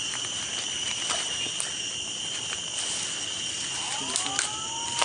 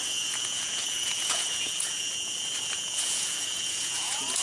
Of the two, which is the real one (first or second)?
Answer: first